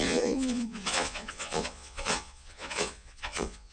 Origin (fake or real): fake